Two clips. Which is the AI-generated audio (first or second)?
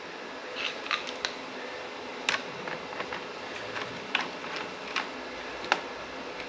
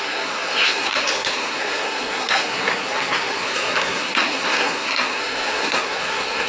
second